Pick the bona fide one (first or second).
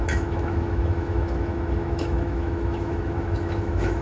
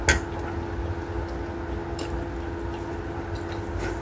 second